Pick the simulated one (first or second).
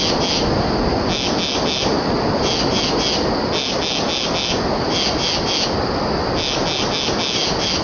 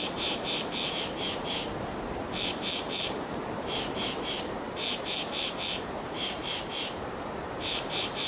second